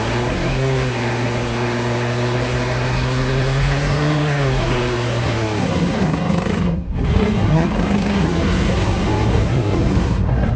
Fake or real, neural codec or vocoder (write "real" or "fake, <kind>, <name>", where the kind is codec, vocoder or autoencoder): fake, codec, SNAC